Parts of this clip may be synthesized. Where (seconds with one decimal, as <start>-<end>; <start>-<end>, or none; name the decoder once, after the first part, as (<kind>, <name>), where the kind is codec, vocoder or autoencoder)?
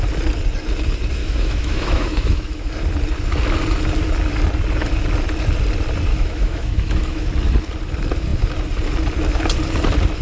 1.2-2.7 (autoencoder, DAC-VAE); 6.1-7.3